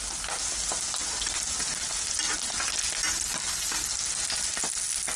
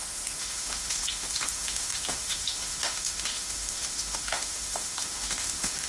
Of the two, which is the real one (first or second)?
first